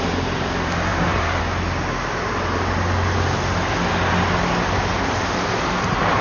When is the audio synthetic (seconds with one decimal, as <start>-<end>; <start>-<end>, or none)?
0.9-1.4